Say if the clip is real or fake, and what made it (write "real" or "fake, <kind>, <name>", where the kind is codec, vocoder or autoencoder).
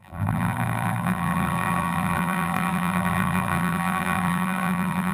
fake, vocoder, BigVGAN v2